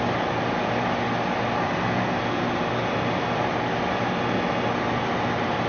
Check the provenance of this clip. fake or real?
real